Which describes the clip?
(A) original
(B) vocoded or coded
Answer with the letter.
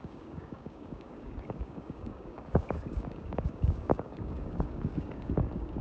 B